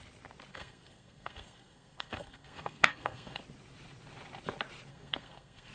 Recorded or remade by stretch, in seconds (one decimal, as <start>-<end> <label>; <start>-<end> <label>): 0.0-0.5 recorded; 0.5-3.4 remade; 3.4-4.9 recorded; 4.9-5.7 remade